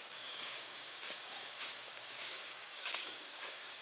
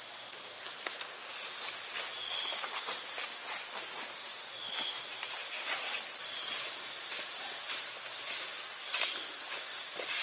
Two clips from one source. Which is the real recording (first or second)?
second